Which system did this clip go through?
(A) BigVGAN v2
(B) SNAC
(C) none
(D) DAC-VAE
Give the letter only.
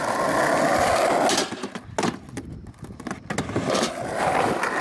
C